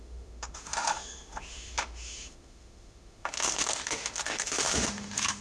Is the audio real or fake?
fake